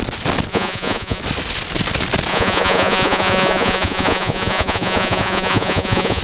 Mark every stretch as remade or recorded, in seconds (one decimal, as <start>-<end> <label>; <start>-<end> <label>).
0.0-0.5 recorded; 0.5-1.2 remade; 1.2-2.3 recorded; 2.3-6.2 remade